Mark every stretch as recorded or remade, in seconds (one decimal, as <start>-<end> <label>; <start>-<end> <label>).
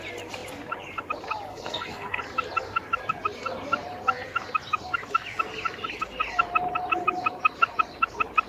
0.0-1.5 recorded; 1.5-2.2 remade; 2.2-8.5 recorded